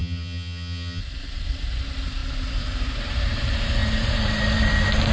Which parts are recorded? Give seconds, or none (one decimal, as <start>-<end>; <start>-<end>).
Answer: 1.0-5.1